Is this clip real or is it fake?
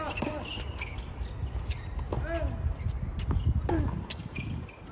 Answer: real